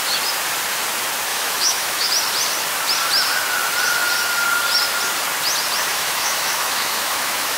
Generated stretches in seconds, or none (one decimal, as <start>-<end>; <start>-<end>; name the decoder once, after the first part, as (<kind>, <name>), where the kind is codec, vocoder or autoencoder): 1.3-2.1 (autoencoder, DAC-VAE); 5.9-7.6